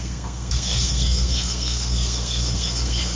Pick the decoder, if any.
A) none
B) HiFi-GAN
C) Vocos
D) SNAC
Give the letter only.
D